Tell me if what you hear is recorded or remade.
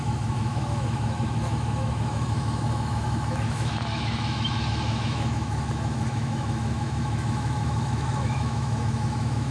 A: remade